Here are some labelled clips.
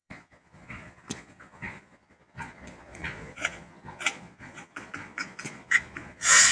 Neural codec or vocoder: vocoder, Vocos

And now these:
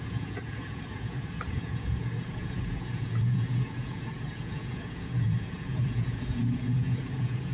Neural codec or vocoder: vocoder, Vocos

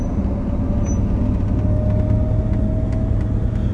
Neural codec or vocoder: none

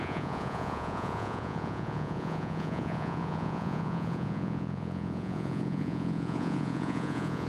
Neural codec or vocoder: vocoder, Vocos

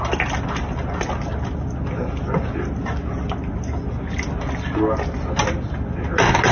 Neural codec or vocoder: none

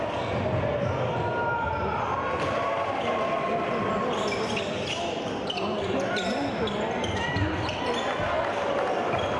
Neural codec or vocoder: none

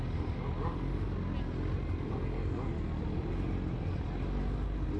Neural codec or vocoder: none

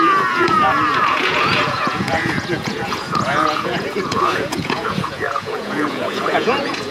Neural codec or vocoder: vocoder, Vocos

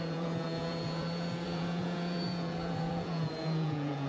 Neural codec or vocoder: vocoder, Vocos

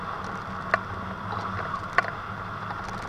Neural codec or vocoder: none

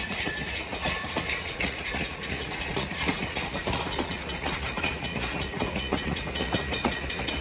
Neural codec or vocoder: vocoder, Vocos